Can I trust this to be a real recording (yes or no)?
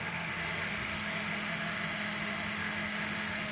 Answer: no